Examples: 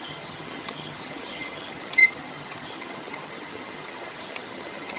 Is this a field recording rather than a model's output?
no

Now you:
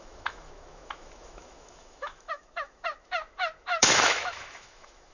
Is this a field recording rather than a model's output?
no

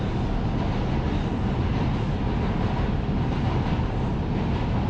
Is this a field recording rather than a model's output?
yes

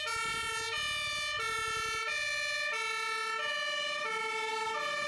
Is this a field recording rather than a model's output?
yes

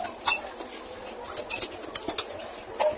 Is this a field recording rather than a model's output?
yes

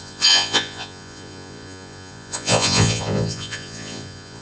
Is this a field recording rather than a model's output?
no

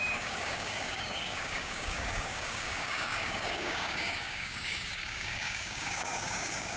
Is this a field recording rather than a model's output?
no